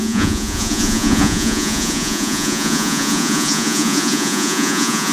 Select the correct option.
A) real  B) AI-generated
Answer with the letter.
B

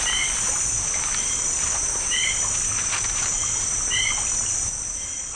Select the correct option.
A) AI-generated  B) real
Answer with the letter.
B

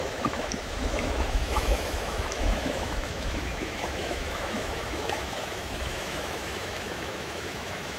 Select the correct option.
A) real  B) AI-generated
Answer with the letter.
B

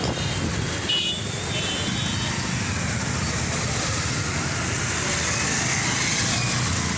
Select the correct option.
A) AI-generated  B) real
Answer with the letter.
B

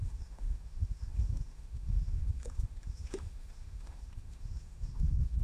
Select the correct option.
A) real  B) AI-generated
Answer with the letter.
B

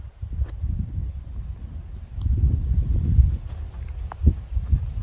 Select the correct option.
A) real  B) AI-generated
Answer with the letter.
A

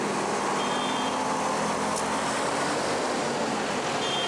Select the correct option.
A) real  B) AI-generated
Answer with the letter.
A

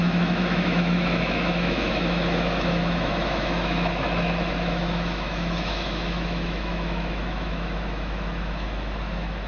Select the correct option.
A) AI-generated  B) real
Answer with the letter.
A